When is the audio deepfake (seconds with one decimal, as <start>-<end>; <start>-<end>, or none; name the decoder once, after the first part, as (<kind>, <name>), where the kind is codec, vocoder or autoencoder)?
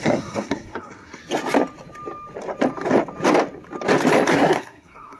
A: 0.0-1.2 (codec, SNAC); 4.3-5.2